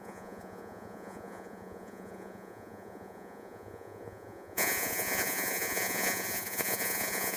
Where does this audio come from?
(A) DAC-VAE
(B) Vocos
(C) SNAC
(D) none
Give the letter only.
B